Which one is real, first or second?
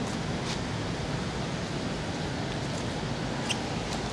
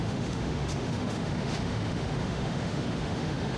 first